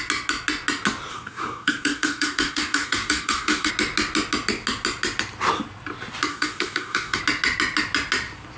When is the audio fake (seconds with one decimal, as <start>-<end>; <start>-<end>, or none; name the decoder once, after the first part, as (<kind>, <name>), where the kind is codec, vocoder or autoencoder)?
1.1-3.7 (codec, DAC); 6.3-7.2